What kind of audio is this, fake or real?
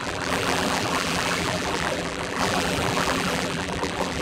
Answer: fake